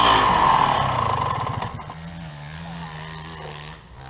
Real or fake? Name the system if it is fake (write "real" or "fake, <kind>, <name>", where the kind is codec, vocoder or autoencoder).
real